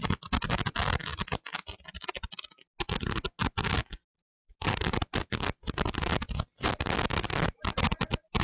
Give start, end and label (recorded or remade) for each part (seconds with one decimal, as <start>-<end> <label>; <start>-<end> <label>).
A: 0.0-1.1 remade; 1.1-3.4 recorded; 3.4-8.4 remade